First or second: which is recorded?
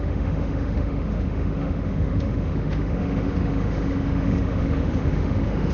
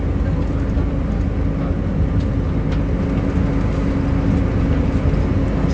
second